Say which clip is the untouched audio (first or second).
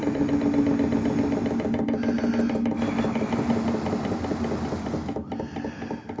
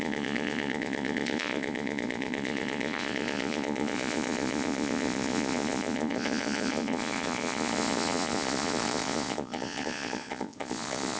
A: first